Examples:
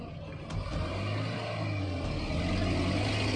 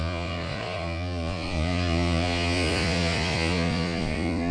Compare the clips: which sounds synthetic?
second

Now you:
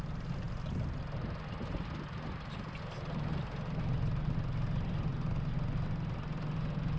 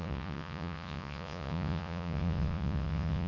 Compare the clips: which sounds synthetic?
second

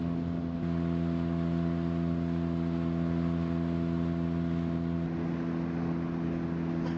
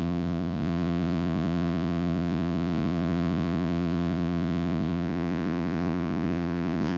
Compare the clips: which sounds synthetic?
second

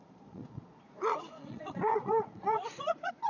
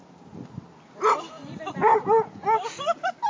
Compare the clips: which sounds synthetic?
first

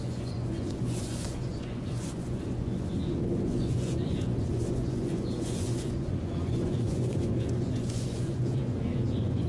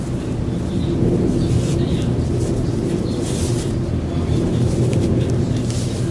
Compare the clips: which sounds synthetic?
first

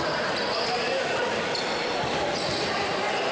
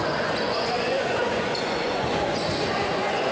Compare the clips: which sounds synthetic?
second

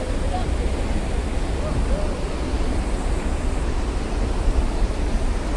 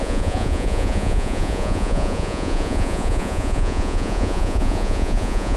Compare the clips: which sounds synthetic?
second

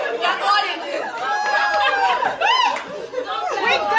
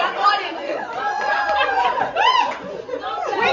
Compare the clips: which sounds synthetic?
second